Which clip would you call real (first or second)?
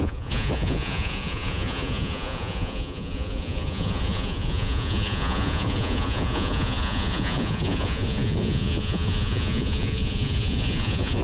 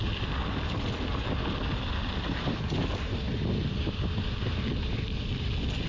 second